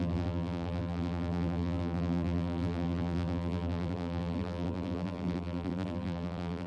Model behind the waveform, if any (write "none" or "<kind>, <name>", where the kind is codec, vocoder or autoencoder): vocoder, BigVGAN v2